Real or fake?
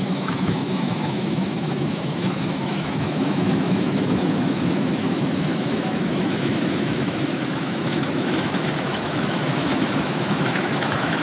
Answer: fake